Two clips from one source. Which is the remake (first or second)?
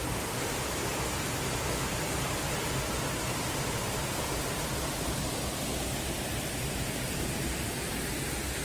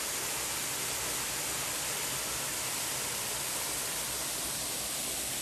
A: first